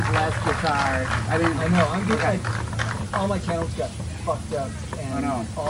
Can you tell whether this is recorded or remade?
recorded